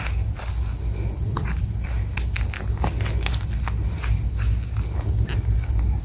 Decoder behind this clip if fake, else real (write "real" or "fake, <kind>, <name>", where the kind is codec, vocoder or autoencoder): real